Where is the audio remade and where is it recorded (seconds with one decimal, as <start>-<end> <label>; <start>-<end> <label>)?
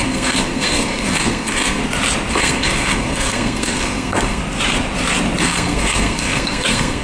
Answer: 0.0-1.8 remade; 1.8-2.3 recorded; 2.3-4.4 remade; 4.4-5.4 recorded; 5.4-7.0 remade